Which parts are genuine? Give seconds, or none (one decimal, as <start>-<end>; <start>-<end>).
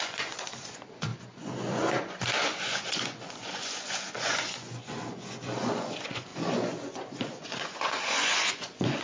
none